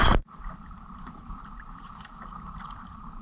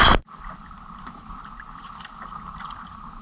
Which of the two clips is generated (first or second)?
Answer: first